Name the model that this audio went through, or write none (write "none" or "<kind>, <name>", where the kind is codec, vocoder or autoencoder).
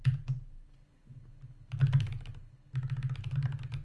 none